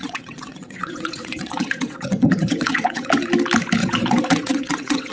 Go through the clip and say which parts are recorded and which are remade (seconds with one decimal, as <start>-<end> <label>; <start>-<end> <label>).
0.0-3.1 remade; 3.1-3.8 recorded; 3.8-5.1 remade